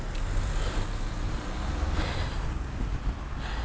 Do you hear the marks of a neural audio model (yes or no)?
no